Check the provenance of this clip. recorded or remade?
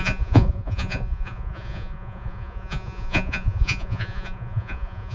remade